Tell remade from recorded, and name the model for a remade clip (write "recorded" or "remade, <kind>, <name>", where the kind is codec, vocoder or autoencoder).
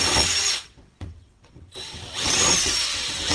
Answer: remade, vocoder, WaveNeXt